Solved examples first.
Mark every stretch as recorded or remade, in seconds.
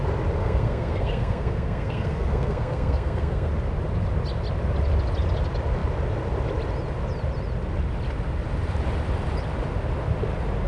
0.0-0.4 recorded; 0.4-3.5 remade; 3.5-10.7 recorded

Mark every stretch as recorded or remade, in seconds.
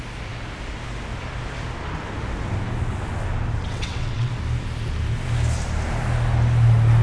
0.0-3.6 recorded; 3.6-4.3 remade; 4.3-7.0 recorded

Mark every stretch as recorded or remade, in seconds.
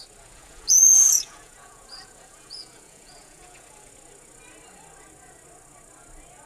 0.0-0.4 recorded; 0.4-3.9 remade; 3.9-6.5 recorded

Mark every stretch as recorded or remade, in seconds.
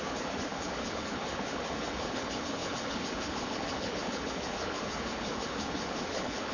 0.0-6.5 remade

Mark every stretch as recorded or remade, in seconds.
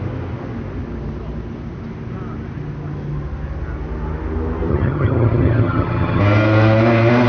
0.0-4.7 recorded; 4.7-6.2 remade; 6.2-7.3 recorded